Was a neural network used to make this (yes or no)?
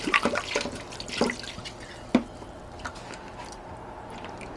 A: no